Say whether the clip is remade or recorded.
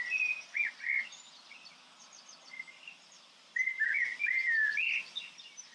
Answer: recorded